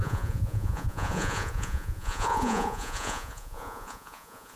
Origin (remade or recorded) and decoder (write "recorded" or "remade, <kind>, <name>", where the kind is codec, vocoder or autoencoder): remade, vocoder, Vocos